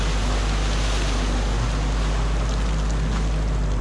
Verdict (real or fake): real